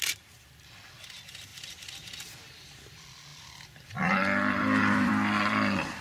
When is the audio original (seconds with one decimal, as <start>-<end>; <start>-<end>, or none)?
0.0-3.3; 5.1-6.0